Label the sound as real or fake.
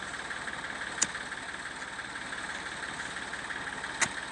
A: real